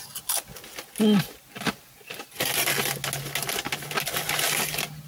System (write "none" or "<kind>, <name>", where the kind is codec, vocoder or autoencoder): none